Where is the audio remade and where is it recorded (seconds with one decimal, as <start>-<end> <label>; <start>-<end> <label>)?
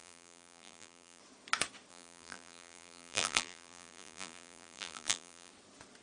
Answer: 0.0-1.2 remade; 1.2-1.9 recorded; 1.9-5.5 remade; 5.5-6.0 recorded